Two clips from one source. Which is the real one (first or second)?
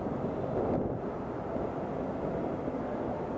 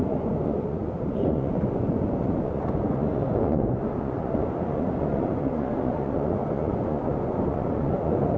first